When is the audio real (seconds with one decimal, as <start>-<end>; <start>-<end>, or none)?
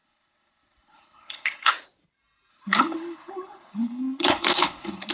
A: 1.7-2.5